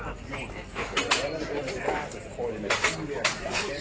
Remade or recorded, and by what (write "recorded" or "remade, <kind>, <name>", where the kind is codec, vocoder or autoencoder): recorded